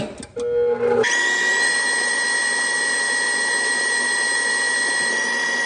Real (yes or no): yes